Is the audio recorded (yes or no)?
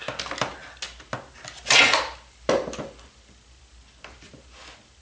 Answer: yes